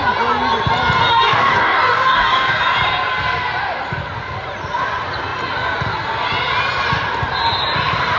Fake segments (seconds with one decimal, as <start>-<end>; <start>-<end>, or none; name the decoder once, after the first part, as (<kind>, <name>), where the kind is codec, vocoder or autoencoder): 1.1-2.6 (codec, DAC)